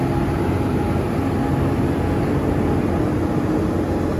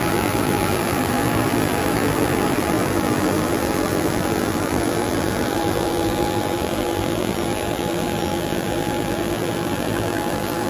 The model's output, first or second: second